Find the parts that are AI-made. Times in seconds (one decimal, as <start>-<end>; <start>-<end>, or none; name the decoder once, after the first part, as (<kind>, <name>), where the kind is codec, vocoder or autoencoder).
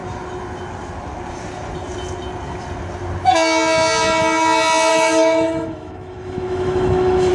4.9-7.3 (autoencoder, DAC-VAE)